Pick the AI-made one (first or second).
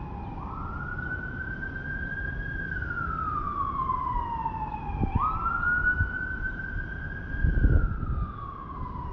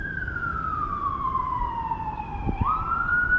second